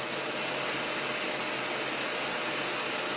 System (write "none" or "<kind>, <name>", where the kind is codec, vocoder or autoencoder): none